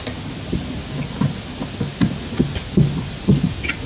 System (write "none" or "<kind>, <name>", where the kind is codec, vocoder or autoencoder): none